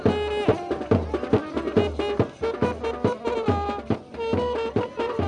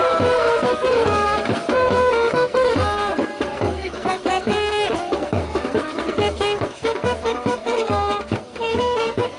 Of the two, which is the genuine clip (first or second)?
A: first